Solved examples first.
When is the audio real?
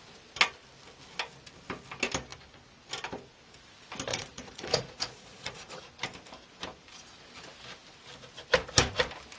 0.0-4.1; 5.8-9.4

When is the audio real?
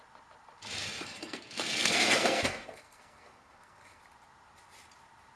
0.0-0.8; 4.0-5.4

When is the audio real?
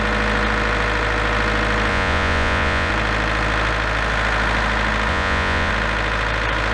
0.0-1.9; 2.9-5.1; 5.7-6.7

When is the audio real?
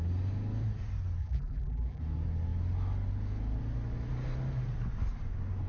0.0-1.2; 2.0-5.7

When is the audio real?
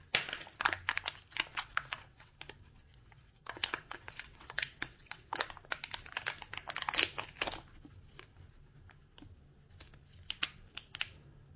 0.0-1.5; 2.3-2.9; 5.5-11.6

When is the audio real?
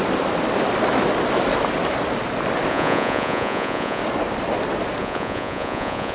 0.0-2.7; 4.0-5.0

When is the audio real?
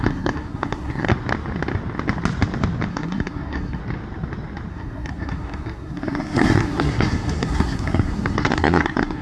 1.1-2.9; 3.8-4.7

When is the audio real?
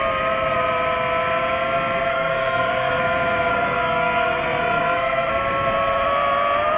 0.0-2.1; 3.0-3.5; 5.3-6.8